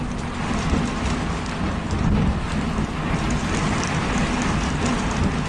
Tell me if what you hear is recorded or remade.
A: recorded